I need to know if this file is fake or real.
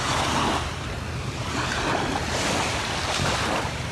real